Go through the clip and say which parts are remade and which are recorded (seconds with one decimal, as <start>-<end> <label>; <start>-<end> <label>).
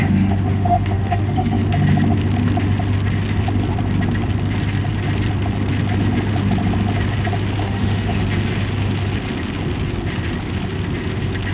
0.0-1.6 remade; 1.6-7.6 recorded; 7.6-8.2 remade; 8.2-11.5 recorded